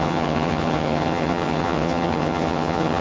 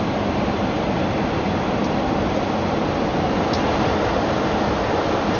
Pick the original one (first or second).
second